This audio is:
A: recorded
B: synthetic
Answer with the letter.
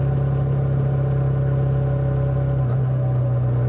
A